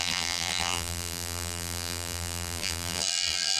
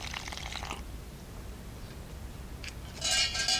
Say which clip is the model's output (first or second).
first